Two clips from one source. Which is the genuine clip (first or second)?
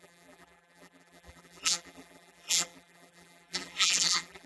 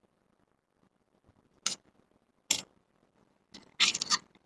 second